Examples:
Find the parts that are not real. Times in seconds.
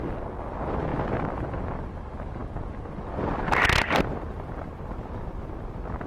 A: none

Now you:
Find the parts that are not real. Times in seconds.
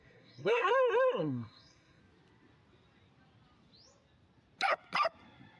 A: 0.0-0.7 (codec, SNAC); 1.2-2.0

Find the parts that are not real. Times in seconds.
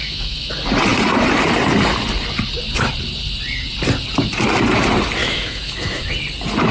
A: 0.0-0.5 (autoencoder, DAC-VAE); 5.2-6.1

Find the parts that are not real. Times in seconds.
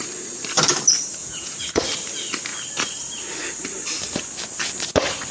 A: 1.2-1.8 (vocoder, Vocos)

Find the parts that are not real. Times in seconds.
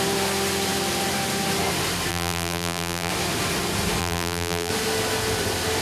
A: 2.1-3.1 (vocoder, BigVGAN v2); 4.0-4.7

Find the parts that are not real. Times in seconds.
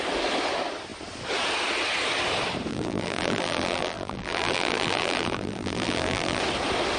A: 2.7-6.4 (vocoder, BigVGAN v2)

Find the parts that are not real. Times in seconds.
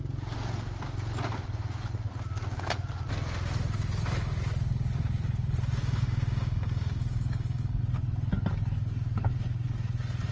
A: 5.8-7.8 (codec, DAC)